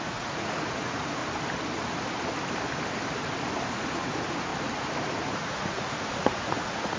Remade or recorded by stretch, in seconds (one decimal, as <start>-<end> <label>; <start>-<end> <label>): 0.0-1.2 remade; 1.2-3.7 recorded; 3.7-4.5 remade; 4.5-5.0 recorded; 5.0-7.0 remade